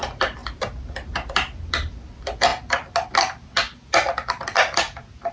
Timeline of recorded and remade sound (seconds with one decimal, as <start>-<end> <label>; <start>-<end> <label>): 0.0-5.3 recorded